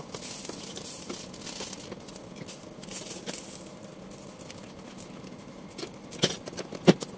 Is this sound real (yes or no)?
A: yes